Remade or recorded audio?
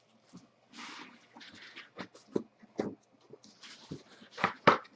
recorded